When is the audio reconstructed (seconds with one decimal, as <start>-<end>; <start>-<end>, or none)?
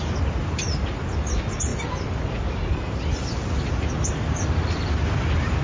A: none